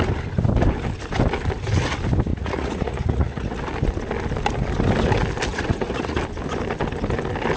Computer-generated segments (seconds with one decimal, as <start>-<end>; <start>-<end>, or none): 2.3-3.6; 5.5-6.2